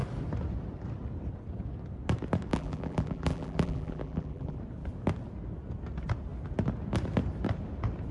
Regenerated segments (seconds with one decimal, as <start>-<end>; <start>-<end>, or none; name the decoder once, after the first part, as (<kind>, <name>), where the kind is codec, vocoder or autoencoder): 2.5-4.6 (vocoder, BigVGAN v2)